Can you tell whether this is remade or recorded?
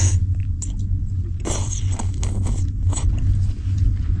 recorded